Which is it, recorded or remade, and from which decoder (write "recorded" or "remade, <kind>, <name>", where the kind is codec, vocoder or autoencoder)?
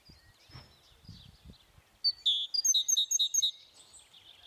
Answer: recorded